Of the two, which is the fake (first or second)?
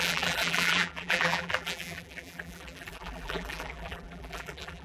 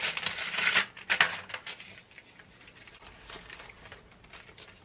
first